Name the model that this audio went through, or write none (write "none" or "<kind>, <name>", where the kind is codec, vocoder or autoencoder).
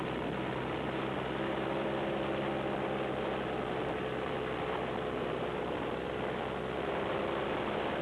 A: none